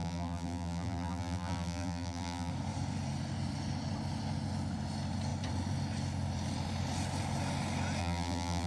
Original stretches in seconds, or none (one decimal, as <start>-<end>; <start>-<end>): 2.5-8.0